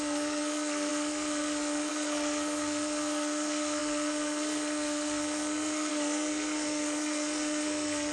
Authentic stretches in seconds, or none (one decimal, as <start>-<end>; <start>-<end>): none

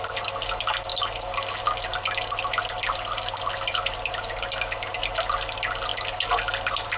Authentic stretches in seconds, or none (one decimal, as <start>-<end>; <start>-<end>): 0.0-7.0